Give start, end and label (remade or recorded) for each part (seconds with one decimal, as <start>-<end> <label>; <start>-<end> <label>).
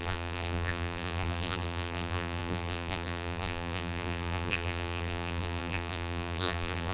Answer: 0.0-6.9 remade